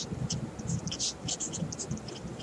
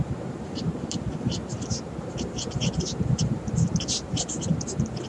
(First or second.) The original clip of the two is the first